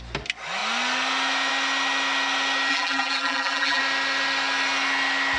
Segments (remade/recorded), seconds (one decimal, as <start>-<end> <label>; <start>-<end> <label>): 0.0-2.7 recorded; 2.7-3.8 remade; 3.8-5.4 recorded